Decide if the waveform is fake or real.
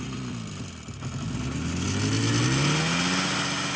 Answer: real